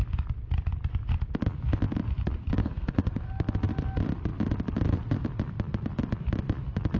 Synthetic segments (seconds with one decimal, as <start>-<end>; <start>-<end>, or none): 2.6-3.3